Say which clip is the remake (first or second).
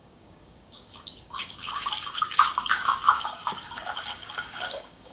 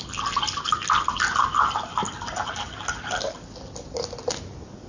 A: first